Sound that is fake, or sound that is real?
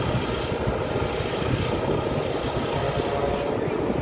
real